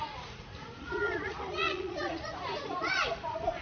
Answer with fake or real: fake